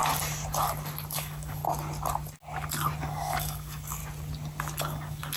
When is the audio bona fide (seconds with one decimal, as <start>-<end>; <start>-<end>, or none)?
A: 0.0-1.1; 1.6-3.0; 4.0-4.8